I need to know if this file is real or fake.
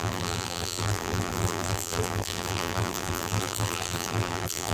fake